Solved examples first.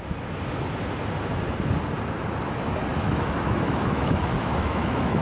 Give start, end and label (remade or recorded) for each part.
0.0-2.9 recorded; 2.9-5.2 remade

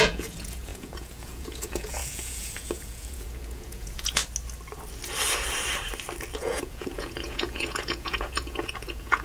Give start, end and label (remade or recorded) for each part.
0.0-4.2 remade; 4.2-6.4 recorded; 6.4-9.2 remade

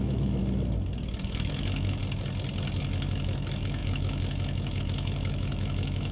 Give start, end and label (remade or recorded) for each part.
0.0-0.4 remade; 0.4-1.2 recorded; 1.2-2.0 remade; 2.0-2.8 recorded; 2.8-6.1 remade

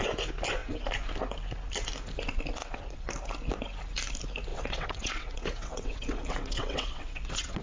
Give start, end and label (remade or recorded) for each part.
0.0-2.6 recorded; 2.6-3.1 remade; 3.1-4.5 recorded; 4.5-7.6 remade

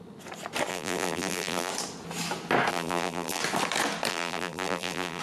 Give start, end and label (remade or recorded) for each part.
0.0-0.7 recorded; 0.7-1.7 remade; 1.7-2.7 recorded; 2.7-3.4 remade; 3.4-4.1 recorded; 4.1-5.2 remade

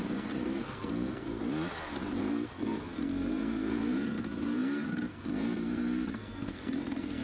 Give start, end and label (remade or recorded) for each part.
0.0-1.4 remade; 1.4-2.2 recorded; 2.2-7.2 remade